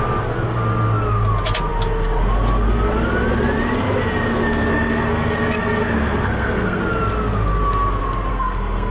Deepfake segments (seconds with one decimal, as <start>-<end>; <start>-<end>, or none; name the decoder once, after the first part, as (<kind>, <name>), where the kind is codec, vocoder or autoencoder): 4.7-6.8 (codec, SNAC); 8.3-8.9